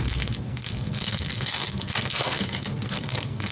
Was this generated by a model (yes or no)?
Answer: yes